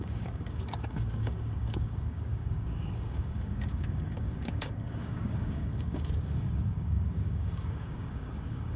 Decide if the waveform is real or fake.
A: fake